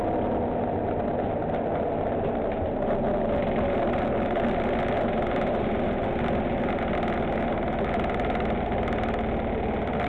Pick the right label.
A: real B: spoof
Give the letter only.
A